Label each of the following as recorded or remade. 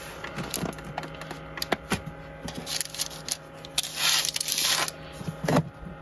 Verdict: recorded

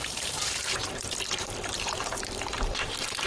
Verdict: remade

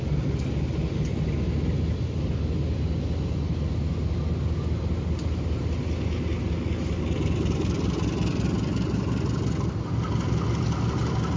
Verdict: recorded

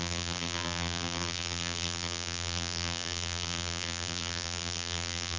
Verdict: remade